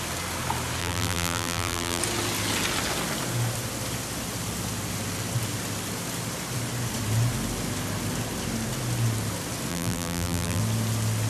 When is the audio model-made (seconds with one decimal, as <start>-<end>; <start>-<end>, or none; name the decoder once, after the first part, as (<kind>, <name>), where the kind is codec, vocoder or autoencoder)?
0.8-2.0 (vocoder, BigVGAN v2); 9.7-10.6